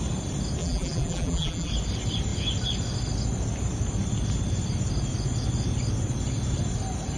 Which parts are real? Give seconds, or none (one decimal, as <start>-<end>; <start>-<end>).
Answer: 0.0-0.6; 1.7-7.2